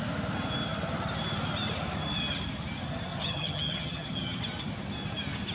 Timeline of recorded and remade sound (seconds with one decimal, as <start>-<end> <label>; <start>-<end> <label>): 0.0-3.1 recorded; 3.1-4.4 remade; 4.4-5.5 recorded